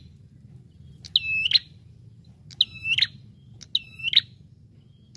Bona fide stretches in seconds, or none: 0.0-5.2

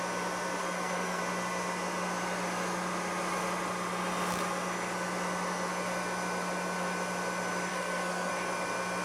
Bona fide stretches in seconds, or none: 0.0-0.6; 1.2-7.7; 8.3-9.0

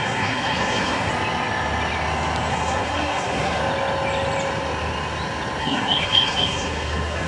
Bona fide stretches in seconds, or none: 1.1-2.5; 3.6-5.6

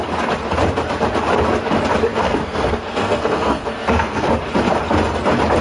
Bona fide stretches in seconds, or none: 0.0-2.2; 4.3-5.6

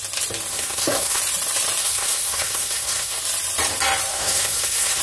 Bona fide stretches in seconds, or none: 0.0-0.5; 1.2-1.8; 3.2-4.1

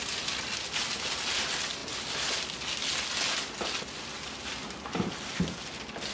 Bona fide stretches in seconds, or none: 0.0-6.1